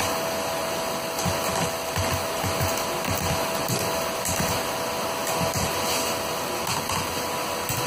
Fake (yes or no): no